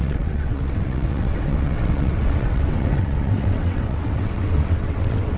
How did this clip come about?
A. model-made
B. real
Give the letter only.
A